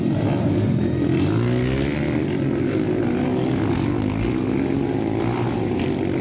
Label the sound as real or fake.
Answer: real